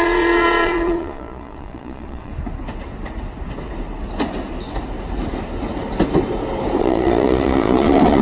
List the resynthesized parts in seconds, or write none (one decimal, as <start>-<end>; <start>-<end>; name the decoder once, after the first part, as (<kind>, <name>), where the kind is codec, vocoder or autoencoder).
0.0-2.3 (vocoder, Vocos); 6.8-8.2